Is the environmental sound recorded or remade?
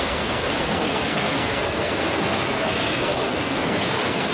remade